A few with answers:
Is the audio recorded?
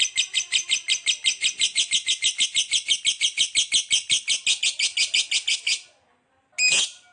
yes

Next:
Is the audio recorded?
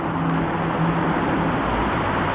yes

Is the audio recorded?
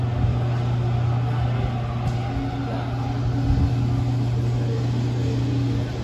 yes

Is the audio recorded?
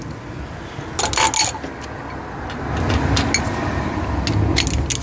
yes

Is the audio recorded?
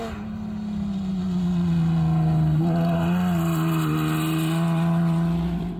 yes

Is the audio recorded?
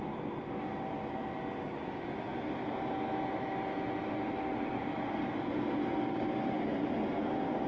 yes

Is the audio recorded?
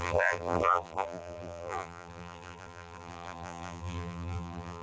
no